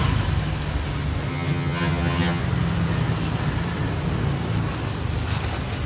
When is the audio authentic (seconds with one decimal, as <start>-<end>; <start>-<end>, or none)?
0.0-1.3; 2.4-5.9

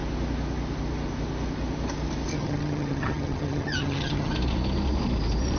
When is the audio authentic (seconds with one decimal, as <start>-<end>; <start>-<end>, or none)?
0.0-2.3; 4.3-5.6